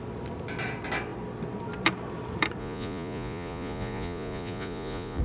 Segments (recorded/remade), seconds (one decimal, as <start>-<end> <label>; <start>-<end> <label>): 0.0-2.6 recorded; 2.6-5.2 remade